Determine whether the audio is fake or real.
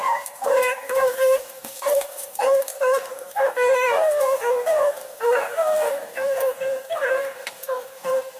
fake